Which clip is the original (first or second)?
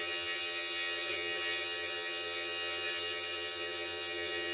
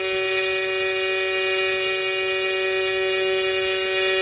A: second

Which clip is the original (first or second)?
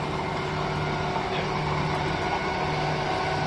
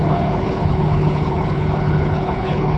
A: first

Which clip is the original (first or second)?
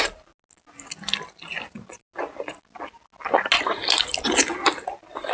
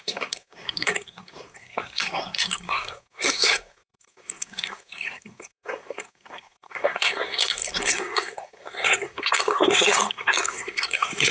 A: first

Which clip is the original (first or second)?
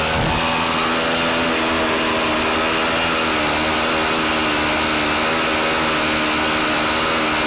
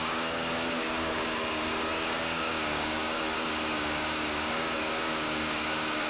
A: first